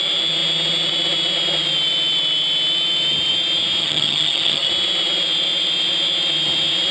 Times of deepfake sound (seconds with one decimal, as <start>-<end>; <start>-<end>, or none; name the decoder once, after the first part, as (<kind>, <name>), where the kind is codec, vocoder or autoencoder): 3.8-4.7 (vocoder, HiFi-GAN)